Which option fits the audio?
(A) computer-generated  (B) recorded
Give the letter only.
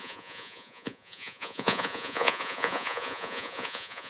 A